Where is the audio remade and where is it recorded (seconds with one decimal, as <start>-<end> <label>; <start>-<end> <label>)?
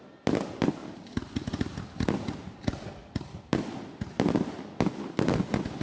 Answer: 0.0-0.8 recorded; 0.8-2.0 remade; 2.0-3.0 recorded; 3.0-4.4 remade; 4.4-5.8 recorded